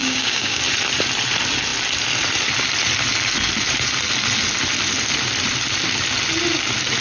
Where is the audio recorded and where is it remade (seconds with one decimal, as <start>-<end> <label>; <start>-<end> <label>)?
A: 0.0-0.6 remade; 0.6-7.0 recorded